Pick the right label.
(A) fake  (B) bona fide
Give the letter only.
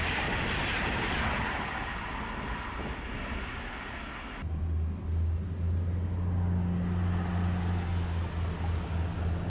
B